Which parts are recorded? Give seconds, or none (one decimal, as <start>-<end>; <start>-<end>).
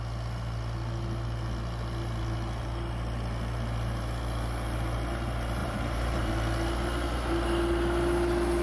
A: 0.0-5.6; 6.3-8.6